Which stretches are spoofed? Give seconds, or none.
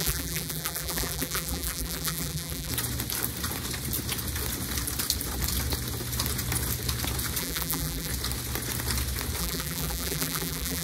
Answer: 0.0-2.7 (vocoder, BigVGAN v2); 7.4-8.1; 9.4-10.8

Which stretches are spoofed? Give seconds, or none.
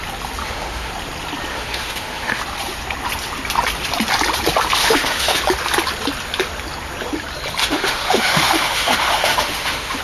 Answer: 0.4-0.9 (autoencoder, DAC-VAE); 1.5-2.4; 4.8-5.4; 7.6-10.0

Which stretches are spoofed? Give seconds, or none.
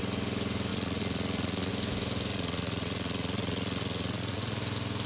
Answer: 0.7-1.7 (vocoder, Vocos); 2.3-4.6